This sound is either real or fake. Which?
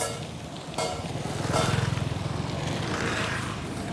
real